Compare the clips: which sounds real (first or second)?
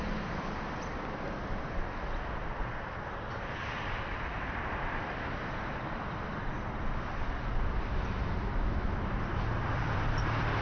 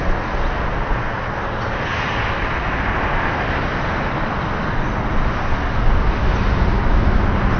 second